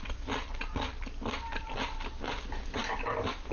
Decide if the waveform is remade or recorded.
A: recorded